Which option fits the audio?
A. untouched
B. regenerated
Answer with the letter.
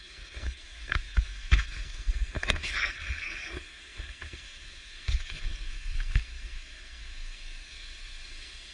B